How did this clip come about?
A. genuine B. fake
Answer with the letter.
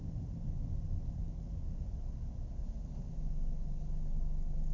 A